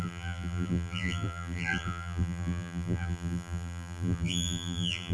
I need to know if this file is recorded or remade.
remade